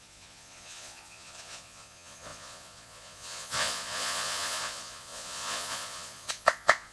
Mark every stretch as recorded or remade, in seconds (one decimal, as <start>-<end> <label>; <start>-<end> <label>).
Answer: 0.0-6.9 remade